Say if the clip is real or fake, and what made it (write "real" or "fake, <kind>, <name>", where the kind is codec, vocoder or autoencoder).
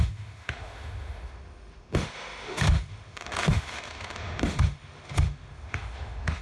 fake, autoencoder, DAC-VAE